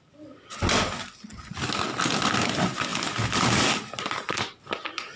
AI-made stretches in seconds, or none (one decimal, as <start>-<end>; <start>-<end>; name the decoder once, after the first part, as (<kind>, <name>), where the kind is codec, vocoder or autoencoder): none